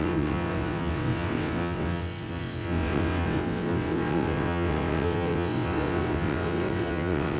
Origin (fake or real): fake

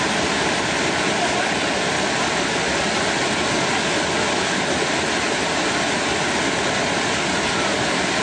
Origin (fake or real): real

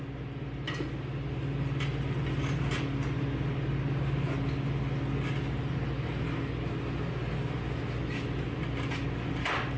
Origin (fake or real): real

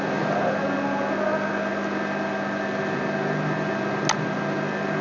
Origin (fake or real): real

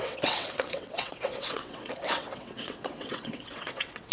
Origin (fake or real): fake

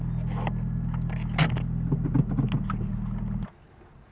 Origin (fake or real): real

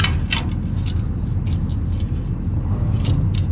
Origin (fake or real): real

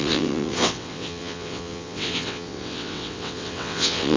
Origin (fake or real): fake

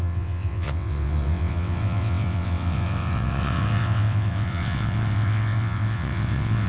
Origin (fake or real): fake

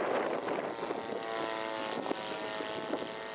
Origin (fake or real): real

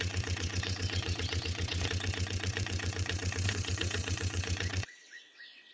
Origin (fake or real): fake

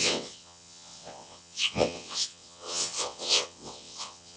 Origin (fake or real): fake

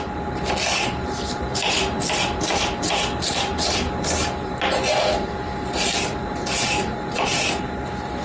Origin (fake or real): real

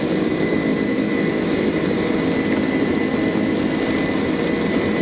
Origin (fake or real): real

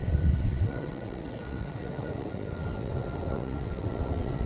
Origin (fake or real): fake